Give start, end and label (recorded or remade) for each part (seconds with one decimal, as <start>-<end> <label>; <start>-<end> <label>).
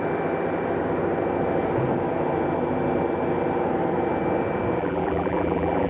0.0-4.8 recorded; 4.8-5.9 remade